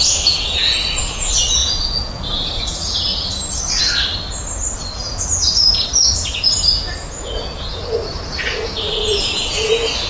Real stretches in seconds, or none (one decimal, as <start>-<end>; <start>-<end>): 3.1-4.9